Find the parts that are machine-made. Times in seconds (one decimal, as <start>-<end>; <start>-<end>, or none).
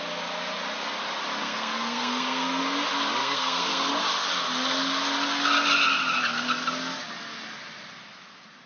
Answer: 1.4-2.6; 3.2-3.9